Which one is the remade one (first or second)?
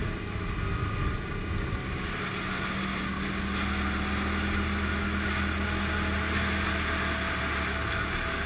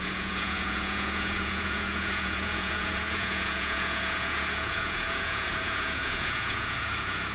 second